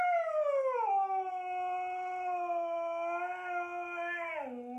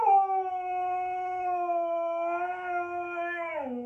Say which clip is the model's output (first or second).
second